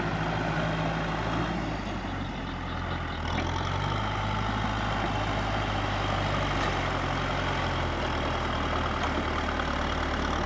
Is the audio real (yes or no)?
yes